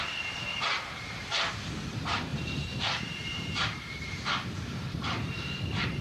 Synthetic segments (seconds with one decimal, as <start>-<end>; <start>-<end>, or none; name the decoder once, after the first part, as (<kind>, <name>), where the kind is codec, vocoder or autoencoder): 0.0-1.3 (vocoder, BigVGAN v2); 1.9-6.0